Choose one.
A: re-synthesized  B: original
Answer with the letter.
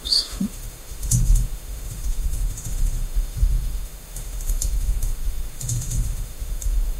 A